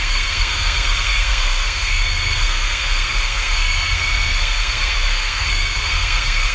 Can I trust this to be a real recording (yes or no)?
no